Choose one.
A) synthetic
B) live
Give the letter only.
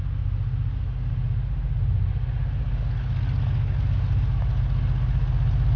B